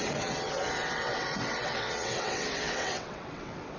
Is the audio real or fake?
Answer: fake